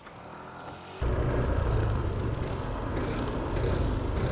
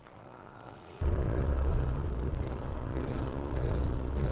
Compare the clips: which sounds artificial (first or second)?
second